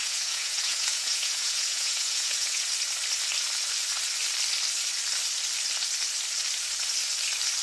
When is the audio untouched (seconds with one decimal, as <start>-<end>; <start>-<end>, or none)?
2.7-7.6